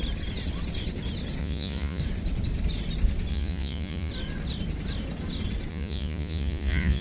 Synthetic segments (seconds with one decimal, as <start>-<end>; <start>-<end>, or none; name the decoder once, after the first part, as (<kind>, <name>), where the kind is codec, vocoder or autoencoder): 1.4-2.0 (vocoder, Vocos); 3.3-4.1; 5.7-7.0